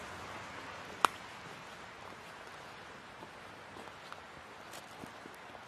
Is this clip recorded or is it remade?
recorded